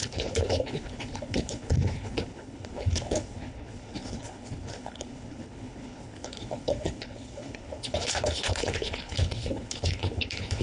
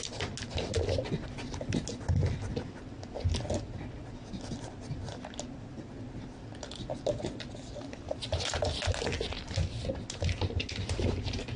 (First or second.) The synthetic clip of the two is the first